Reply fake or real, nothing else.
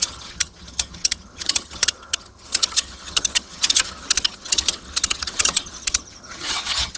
fake